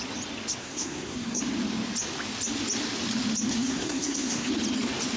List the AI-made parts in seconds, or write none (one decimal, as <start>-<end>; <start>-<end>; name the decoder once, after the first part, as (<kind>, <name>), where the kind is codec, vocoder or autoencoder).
0.6-1.4 (codec, SNAC); 3.5-4.5